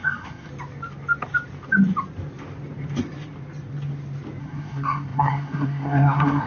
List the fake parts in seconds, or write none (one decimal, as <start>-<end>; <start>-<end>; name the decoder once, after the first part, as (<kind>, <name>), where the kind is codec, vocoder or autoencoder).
0.0-0.5 (codec, SNAC); 4.4-6.5